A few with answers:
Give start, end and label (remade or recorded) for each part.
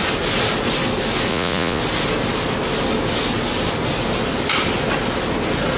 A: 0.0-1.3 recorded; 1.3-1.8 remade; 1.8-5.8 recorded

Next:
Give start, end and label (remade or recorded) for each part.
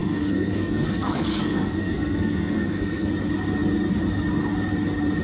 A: 0.0-3.1 remade; 3.1-5.2 recorded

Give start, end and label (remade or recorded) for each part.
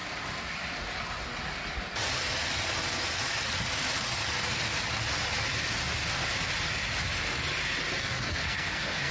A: 0.0-8.0 recorded; 8.0-9.1 remade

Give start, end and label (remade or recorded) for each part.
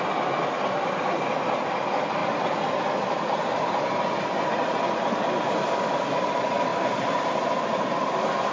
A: 0.0-8.5 recorded